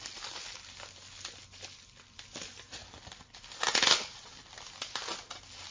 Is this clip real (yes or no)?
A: yes